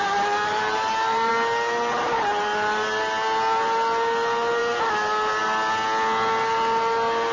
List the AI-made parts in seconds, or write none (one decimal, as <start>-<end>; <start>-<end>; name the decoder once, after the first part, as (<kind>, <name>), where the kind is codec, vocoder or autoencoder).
0.5-1.3 (vocoder, BigVGAN v2)